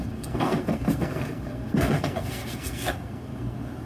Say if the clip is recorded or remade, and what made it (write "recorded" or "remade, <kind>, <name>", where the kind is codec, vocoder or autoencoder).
remade, codec, SNAC